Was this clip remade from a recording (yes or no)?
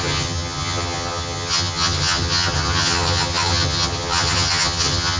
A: yes